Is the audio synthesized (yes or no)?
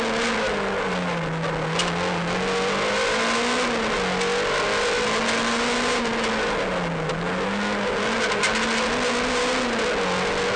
no